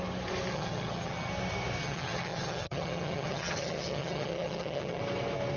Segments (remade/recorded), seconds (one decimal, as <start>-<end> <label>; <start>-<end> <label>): 0.0-0.5 recorded; 0.5-1.3 remade; 1.3-1.8 recorded; 1.8-5.0 remade; 5.0-5.6 recorded